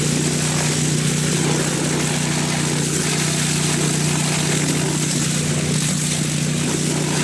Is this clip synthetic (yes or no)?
no